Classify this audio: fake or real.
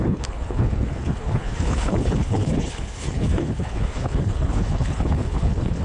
fake